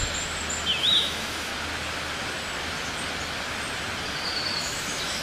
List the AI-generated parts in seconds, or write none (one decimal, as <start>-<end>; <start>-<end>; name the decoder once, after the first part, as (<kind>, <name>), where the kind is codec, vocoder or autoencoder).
0.8-1.5 (autoencoder, DAC-VAE); 4.6-5.2